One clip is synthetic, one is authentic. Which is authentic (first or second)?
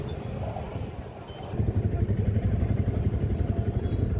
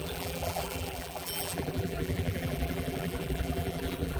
first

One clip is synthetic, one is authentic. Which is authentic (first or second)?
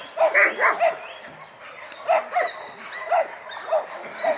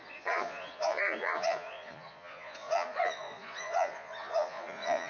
first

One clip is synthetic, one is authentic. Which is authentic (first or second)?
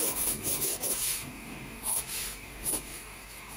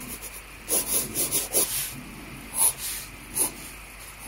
second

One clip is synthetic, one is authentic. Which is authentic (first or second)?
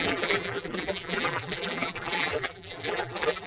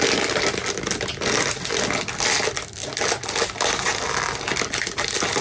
second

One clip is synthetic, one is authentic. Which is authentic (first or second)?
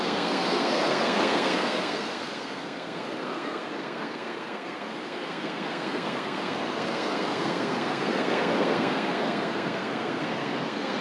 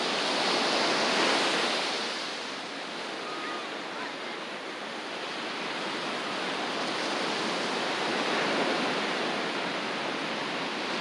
second